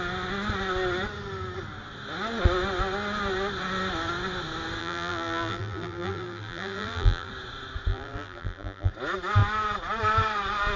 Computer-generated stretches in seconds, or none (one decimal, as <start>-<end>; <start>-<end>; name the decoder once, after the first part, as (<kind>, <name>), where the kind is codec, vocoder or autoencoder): 4.8-7.3 (vocoder, BigVGAN v2); 7.9-8.9